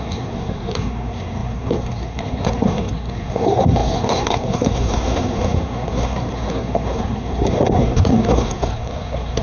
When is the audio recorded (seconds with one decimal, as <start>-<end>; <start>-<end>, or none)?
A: none